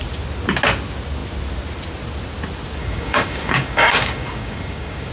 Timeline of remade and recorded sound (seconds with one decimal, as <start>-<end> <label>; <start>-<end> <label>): 0.0-2.8 recorded; 2.8-5.1 remade